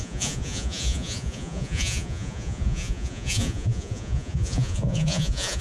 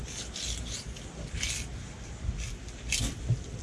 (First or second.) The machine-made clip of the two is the first